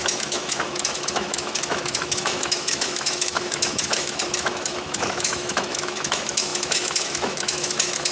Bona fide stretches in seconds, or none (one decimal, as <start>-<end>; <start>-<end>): none